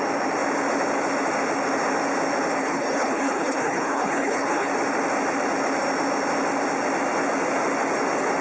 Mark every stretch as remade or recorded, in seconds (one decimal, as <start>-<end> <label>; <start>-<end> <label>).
0.0-2.6 recorded; 2.6-4.7 remade; 4.7-8.4 recorded